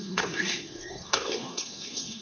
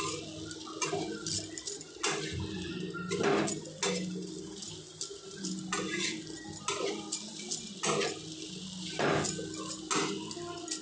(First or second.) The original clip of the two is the second